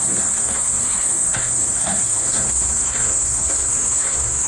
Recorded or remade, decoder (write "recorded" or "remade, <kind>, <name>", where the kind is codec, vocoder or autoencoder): remade, codec, SNAC